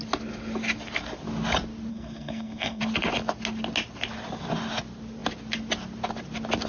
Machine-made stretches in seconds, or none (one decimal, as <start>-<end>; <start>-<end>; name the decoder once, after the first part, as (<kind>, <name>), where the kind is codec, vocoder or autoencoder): 1.9-2.8 (codec, SNAC)